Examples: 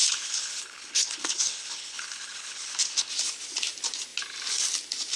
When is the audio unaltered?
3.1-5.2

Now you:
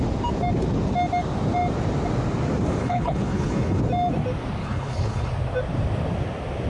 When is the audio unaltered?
0.0-2.8; 3.8-4.6; 5.3-6.7